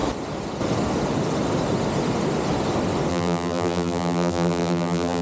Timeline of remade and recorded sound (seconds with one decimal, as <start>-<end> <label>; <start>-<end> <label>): 0.0-3.1 recorded; 3.1-5.2 remade